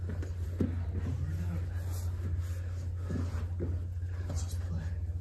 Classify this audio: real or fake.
real